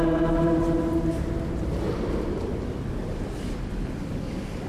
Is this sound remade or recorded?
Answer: recorded